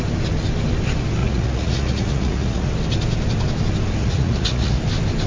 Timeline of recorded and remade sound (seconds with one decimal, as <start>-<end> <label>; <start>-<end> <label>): 0.0-1.2 recorded; 1.2-2.7 remade; 2.7-4.0 recorded; 4.0-4.8 remade; 4.8-5.3 recorded